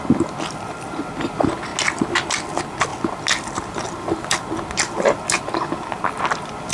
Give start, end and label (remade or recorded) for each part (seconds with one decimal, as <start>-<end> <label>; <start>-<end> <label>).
0.0-6.7 recorded